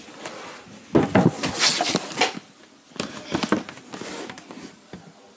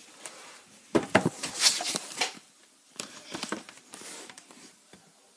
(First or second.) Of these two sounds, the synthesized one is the second